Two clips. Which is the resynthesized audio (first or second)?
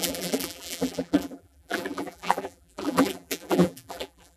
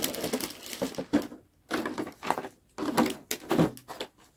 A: first